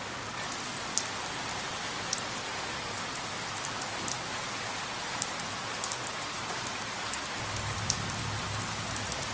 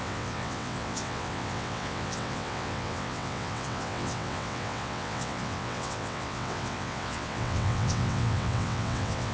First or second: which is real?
first